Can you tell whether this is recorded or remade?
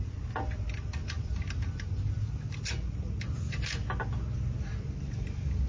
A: recorded